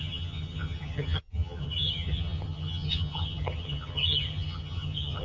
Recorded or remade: remade